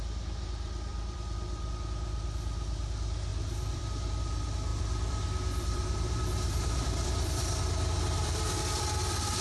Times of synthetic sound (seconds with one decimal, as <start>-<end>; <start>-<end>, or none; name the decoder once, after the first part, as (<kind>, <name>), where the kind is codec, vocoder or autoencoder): 0.9-1.7 (vocoder, BigVGAN v2); 3.3-4.2; 4.7-9.4